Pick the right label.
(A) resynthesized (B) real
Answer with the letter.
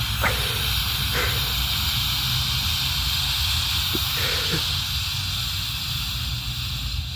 B